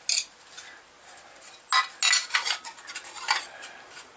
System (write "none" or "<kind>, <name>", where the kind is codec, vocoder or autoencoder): none